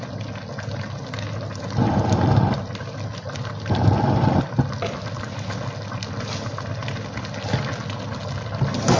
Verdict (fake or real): real